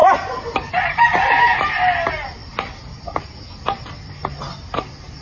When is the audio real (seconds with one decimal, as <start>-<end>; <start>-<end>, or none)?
1.8-5.2